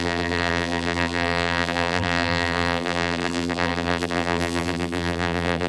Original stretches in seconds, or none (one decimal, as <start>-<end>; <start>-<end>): none